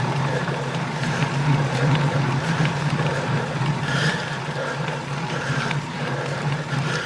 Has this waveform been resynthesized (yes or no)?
yes